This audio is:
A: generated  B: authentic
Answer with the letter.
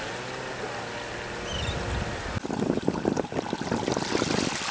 B